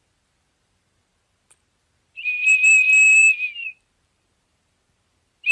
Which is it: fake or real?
fake